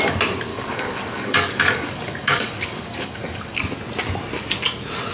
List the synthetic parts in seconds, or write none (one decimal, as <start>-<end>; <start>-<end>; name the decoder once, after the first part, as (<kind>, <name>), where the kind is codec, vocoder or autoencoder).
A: 0.5-3.6 (codec, DAC)